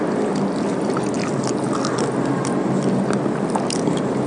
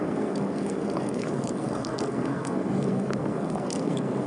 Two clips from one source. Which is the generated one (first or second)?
second